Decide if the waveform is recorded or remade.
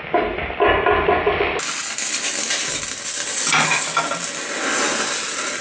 recorded